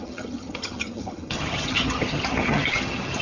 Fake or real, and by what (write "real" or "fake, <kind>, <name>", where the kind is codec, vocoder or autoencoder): fake, vocoder, HiFi-GAN